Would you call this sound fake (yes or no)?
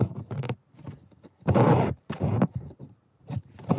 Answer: yes